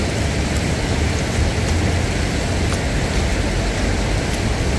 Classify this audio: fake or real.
real